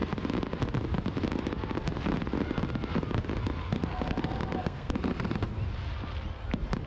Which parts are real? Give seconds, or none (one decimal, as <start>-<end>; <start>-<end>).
0.0-3.6; 5.4-6.9

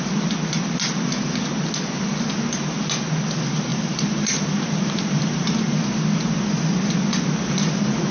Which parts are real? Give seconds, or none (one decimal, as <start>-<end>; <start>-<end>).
0.0-3.7; 6.0-8.1